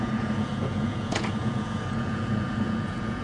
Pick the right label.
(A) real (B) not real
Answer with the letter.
B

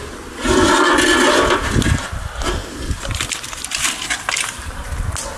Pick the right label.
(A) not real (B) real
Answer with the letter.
B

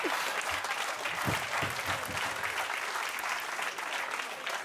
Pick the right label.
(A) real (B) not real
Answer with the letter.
A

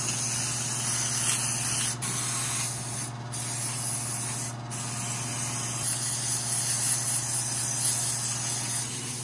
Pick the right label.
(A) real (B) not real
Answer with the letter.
A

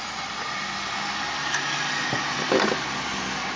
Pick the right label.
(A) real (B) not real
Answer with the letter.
A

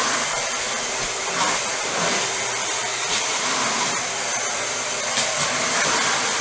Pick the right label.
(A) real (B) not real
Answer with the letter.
B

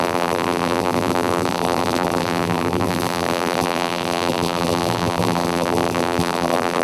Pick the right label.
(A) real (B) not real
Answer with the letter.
B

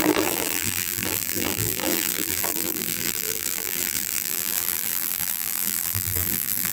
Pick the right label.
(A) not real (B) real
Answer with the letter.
A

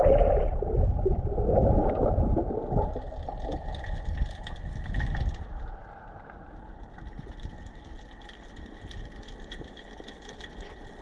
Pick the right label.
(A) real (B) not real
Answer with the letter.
A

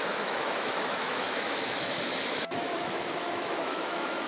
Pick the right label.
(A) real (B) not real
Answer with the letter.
B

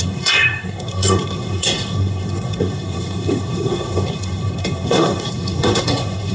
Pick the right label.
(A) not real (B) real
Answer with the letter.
A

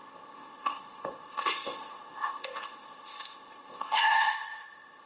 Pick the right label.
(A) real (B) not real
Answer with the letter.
B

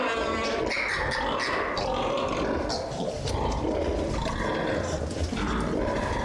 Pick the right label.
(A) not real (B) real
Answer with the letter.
A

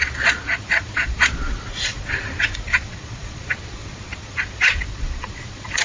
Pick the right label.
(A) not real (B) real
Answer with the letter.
A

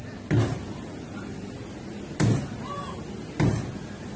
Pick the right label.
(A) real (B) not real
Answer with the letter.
A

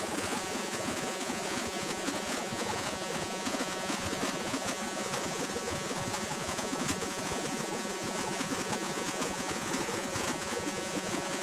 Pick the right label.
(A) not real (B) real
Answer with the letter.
A